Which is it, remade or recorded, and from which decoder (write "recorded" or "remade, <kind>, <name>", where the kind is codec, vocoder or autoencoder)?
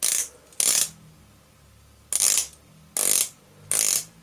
recorded